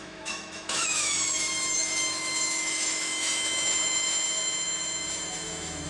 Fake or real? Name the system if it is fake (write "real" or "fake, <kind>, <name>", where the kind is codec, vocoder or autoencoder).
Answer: fake, autoencoder, DAC-VAE